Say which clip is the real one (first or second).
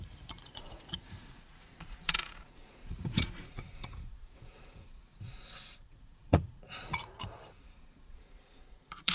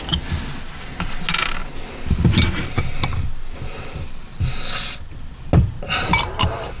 second